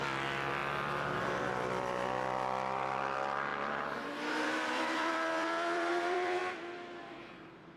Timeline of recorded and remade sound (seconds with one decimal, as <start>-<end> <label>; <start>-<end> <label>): 0.0-0.6 remade; 0.6-1.2 recorded; 1.2-6.4 remade; 6.4-7.0 recorded; 7.0-7.8 remade